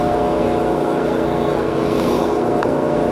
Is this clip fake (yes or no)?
yes